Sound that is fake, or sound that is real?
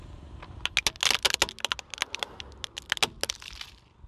real